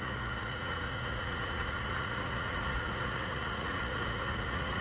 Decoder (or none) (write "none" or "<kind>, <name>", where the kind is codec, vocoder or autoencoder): vocoder, Vocos